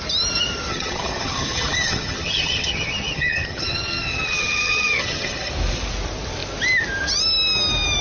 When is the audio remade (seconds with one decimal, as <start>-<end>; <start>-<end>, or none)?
0.7-5.5